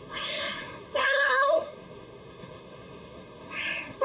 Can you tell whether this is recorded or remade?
remade